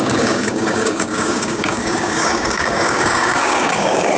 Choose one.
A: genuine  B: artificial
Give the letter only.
B